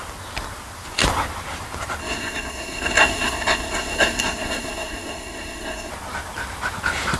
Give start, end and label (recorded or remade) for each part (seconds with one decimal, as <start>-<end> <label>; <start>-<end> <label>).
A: 0.0-2.0 recorded; 2.0-5.9 remade; 5.9-7.2 recorded